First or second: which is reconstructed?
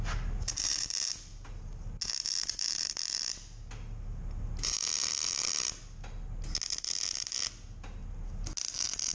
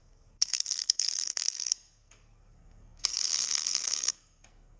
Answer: second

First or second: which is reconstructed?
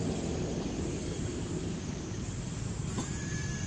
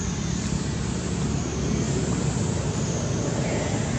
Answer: first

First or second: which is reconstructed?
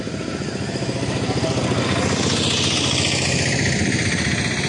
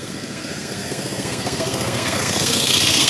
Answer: second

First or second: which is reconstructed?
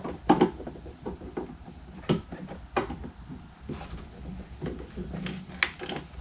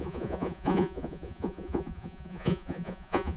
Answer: second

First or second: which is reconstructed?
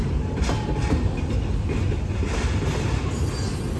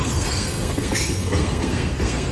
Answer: second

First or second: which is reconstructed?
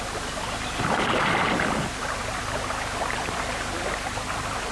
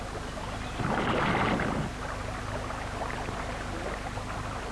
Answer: first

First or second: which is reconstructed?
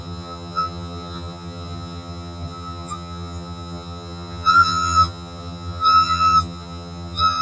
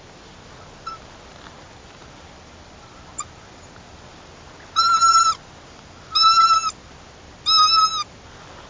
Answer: first